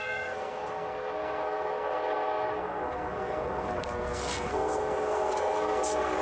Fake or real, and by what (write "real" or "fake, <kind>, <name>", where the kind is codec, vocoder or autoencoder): fake, codec, SNAC